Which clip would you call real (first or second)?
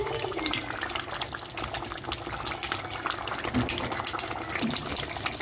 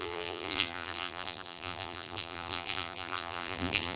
first